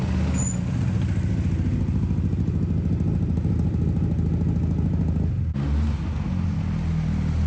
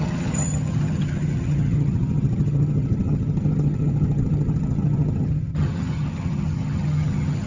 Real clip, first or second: first